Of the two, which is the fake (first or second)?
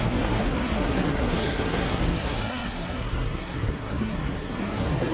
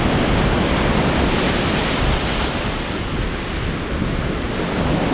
first